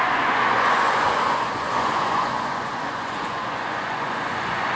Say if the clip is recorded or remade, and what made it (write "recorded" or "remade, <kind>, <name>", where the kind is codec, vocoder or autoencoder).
remade, vocoder, Vocos